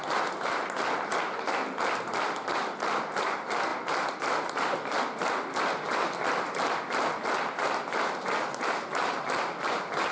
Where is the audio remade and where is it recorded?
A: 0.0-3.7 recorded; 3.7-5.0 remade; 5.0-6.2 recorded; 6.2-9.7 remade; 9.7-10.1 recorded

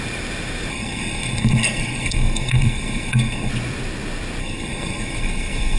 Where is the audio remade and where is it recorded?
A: 0.0-0.7 recorded; 0.7-3.5 remade; 3.5-4.4 recorded; 4.4-5.8 remade

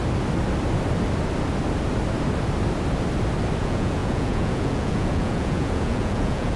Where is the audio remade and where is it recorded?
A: 0.0-3.6 recorded; 3.6-6.6 remade